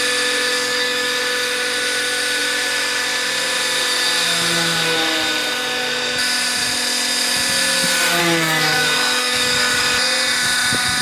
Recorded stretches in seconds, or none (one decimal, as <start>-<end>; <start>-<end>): 0.0-0.5; 1.2-8.2; 9.8-11.0